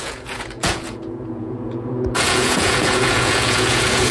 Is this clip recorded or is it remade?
remade